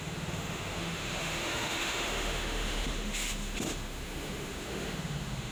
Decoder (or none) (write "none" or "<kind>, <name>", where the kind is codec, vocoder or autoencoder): autoencoder, DAC-VAE